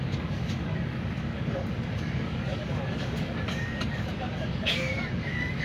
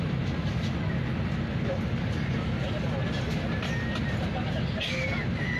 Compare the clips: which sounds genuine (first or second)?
second